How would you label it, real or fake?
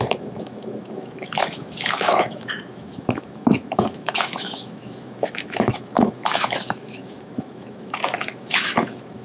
fake